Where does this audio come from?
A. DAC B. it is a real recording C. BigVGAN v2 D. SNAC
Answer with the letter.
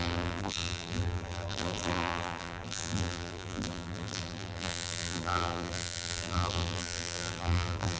C